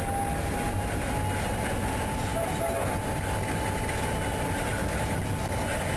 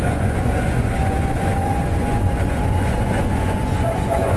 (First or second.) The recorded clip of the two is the first